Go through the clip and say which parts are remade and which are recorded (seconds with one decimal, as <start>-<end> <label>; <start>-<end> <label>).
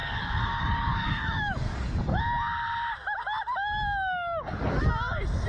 0.0-2.2 remade; 2.2-5.5 recorded